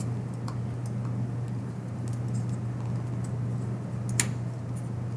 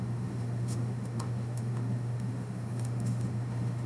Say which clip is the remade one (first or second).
second